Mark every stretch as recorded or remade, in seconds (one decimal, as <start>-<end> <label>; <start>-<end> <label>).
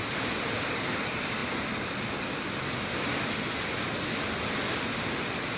0.0-5.6 recorded